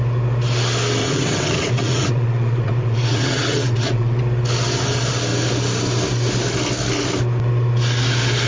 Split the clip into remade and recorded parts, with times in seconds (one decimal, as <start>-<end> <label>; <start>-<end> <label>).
0.0-1.0 recorded; 1.0-4.2 remade; 4.2-8.5 recorded